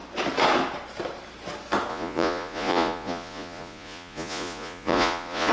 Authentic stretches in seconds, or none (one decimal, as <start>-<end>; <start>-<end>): 0.0-1.9